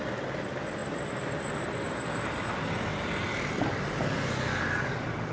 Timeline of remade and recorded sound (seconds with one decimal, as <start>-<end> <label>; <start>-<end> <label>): 0.0-5.3 recorded